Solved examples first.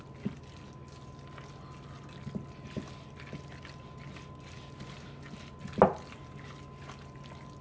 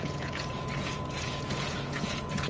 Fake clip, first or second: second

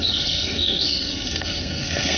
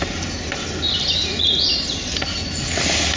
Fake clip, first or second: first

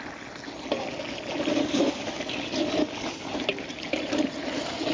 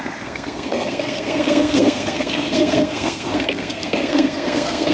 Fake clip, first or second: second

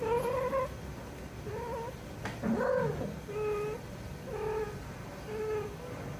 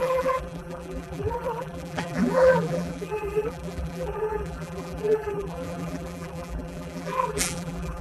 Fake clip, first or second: second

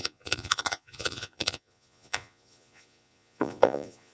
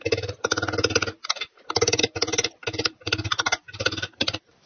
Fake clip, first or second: first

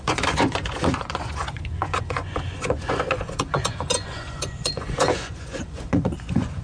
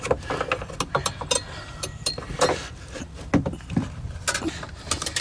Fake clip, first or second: first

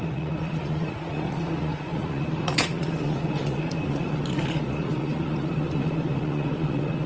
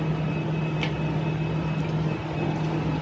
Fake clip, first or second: first